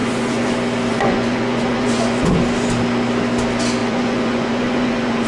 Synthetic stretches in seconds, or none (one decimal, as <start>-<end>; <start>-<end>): 0.0-0.5; 0.9-2.3; 3.8-5.3